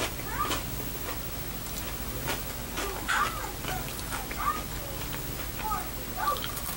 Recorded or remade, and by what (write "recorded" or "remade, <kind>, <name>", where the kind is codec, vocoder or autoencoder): recorded